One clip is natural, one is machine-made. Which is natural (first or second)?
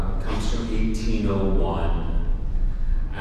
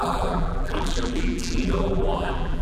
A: first